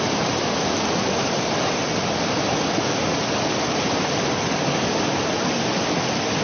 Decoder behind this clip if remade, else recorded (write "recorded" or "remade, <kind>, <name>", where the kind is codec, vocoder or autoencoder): recorded